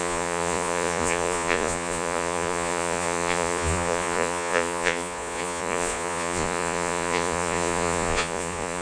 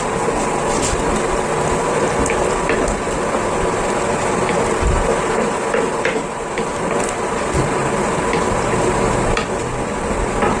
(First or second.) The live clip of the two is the second